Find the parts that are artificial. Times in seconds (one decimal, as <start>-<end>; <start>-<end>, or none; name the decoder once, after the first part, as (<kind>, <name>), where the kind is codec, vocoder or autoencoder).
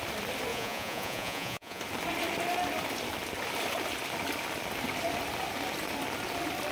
0.5-1.8 (vocoder, Vocos)